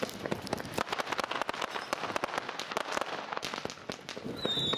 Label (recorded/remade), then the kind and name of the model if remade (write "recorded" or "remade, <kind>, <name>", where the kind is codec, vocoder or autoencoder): recorded